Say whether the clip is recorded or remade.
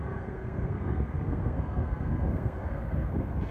remade